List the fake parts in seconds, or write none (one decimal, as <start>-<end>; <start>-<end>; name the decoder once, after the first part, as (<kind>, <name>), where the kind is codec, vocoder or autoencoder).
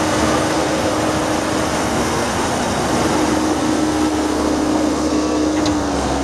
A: 0.0-0.9 (codec, SNAC); 1.8-2.3; 3.6-6.2